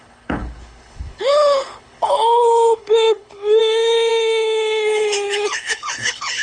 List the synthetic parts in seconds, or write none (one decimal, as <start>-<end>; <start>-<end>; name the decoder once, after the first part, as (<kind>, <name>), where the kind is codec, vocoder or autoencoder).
0.0-6.4 (codec, HILCodec)